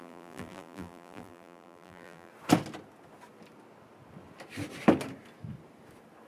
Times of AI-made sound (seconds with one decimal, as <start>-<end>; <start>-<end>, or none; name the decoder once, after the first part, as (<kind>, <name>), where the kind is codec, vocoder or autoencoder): 0.0-2.3 (vocoder, BigVGAN v2)